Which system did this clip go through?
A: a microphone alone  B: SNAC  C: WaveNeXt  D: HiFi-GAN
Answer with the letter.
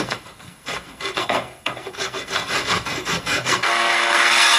B